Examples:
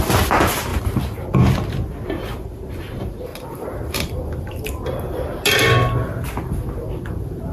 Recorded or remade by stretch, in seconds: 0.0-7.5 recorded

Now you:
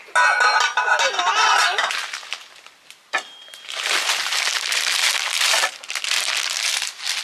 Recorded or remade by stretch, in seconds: 0.0-2.4 recorded; 2.4-4.2 remade; 4.2-7.2 recorded